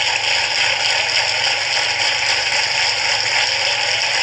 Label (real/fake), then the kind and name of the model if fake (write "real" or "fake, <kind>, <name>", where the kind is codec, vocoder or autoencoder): real